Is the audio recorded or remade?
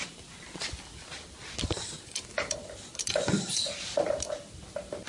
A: recorded